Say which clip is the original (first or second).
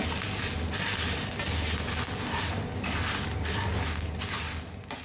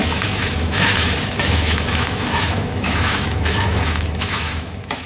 first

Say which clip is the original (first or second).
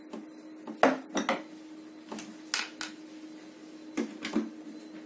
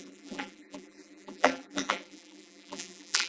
first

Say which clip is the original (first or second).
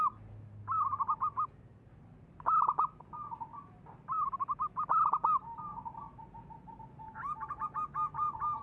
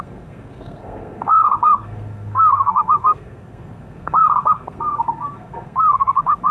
first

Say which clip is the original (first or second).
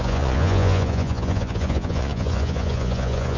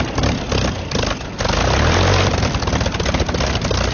second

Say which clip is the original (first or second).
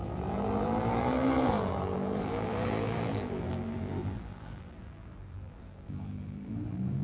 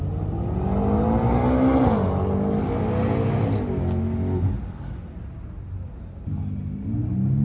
second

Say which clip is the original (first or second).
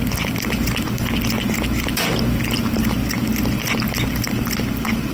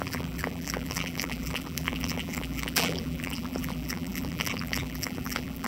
first